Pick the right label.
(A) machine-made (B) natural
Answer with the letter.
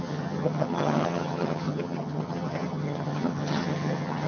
A